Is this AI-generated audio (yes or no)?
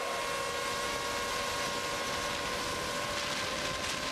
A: no